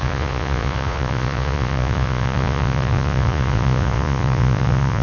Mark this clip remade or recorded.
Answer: remade